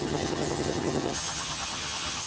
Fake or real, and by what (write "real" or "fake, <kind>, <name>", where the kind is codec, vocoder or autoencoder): fake, vocoder, HiFi-GAN